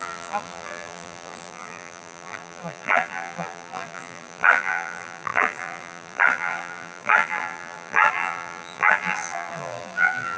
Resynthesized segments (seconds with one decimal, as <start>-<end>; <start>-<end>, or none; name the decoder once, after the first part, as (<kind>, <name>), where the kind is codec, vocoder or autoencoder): 0.0-10.4 (vocoder, BigVGAN v2)

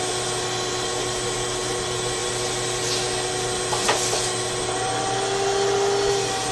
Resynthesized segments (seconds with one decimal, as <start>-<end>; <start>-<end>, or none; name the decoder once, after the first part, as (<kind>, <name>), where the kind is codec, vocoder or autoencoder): none